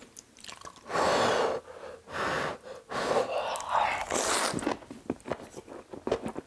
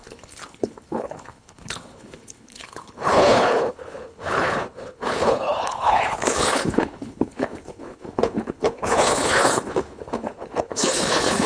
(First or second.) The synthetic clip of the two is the second